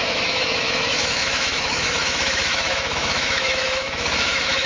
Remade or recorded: remade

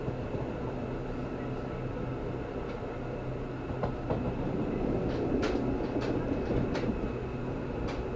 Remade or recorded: recorded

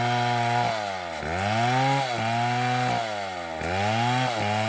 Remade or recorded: recorded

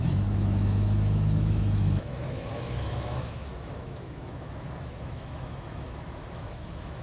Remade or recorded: remade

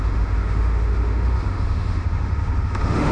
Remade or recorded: remade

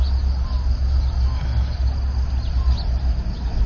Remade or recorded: recorded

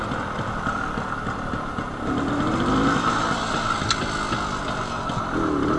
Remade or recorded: recorded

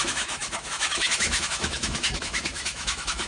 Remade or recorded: remade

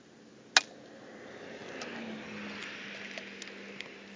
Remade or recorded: recorded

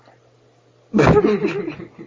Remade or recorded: recorded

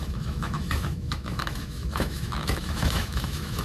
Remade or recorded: remade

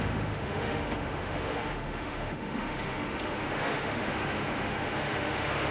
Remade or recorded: remade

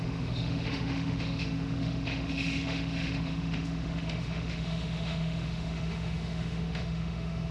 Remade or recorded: remade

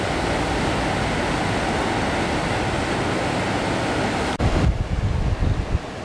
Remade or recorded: recorded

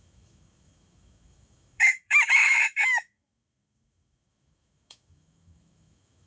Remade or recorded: remade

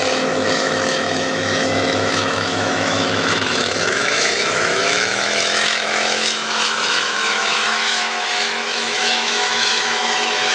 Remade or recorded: remade